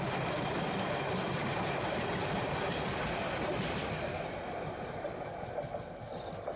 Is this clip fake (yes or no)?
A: no